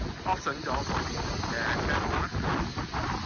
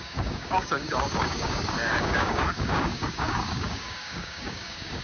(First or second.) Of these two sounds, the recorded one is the first